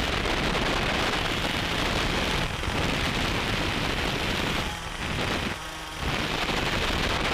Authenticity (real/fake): real